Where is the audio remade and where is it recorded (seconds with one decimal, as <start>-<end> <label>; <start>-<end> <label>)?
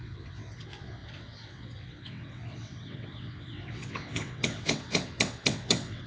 0.0-6.1 remade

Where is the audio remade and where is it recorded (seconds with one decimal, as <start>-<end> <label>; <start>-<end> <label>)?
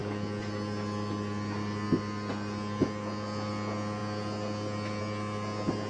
0.0-5.9 recorded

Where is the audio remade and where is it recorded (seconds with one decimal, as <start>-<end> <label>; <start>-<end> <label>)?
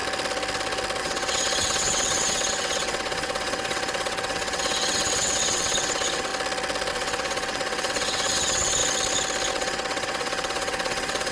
0.0-1.0 recorded; 1.0-6.3 remade; 6.3-6.9 recorded; 6.9-8.8 remade; 8.8-9.5 recorded; 9.5-11.3 remade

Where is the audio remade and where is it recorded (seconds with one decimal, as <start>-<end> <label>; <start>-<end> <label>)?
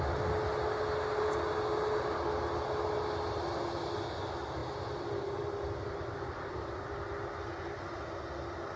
0.0-8.8 recorded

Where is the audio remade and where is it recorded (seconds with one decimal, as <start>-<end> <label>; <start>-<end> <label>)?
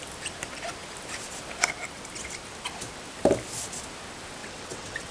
0.0-4.4 recorded; 4.4-5.1 remade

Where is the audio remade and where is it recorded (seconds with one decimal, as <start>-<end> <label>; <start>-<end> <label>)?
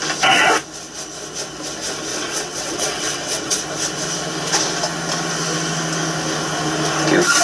0.0-2.1 recorded; 2.1-3.6 remade; 3.6-7.4 recorded